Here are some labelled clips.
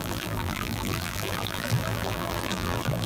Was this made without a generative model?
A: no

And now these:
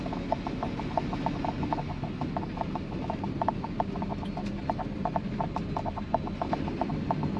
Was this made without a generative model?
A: yes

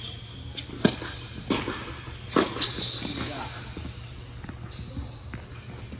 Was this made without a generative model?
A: yes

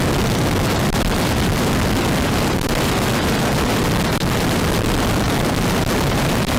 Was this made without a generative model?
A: no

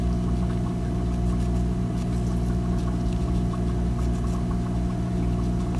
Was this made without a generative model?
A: yes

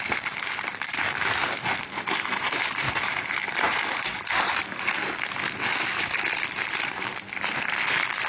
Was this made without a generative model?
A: no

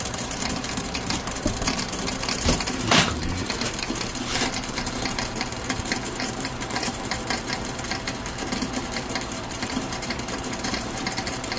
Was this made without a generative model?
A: no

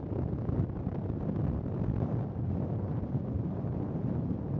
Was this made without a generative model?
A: yes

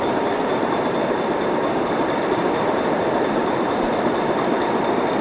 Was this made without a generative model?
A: no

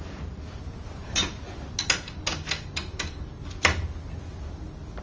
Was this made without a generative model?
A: yes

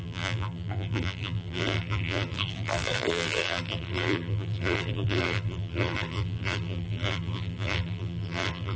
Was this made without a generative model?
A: no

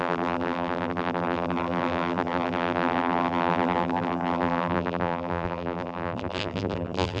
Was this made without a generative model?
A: no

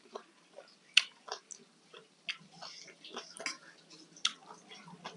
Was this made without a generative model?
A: yes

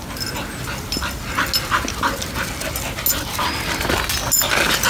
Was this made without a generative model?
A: yes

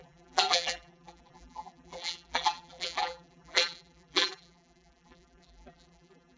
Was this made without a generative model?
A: no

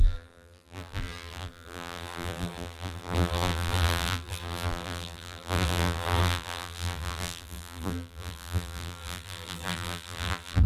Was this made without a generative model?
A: no